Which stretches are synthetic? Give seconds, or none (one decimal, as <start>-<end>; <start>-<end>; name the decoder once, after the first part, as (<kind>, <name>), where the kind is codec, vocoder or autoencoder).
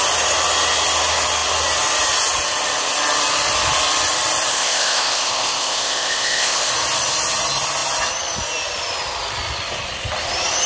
4.5-6.7 (codec, ZipCodec)